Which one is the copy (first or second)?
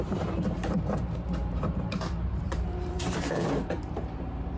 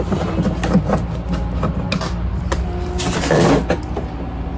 first